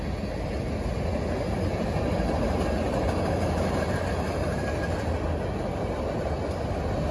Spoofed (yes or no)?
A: no